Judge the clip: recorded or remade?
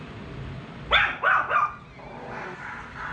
recorded